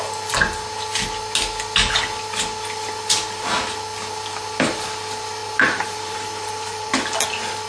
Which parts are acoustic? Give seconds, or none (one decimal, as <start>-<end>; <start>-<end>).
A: 0.0-5.4; 6.9-7.7